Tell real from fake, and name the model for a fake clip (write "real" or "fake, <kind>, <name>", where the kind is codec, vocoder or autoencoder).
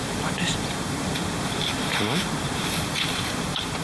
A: fake, vocoder, BigVGAN v2